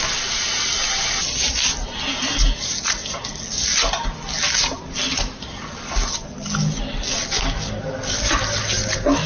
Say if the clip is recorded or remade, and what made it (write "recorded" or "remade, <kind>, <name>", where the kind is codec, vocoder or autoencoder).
recorded